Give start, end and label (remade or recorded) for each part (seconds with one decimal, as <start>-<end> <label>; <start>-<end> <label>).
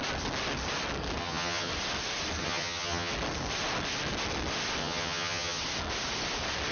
0.0-1.2 recorded; 1.2-1.7 remade; 1.7-2.4 recorded; 2.4-3.1 remade; 3.1-4.8 recorded; 4.8-5.6 remade; 5.6-6.7 recorded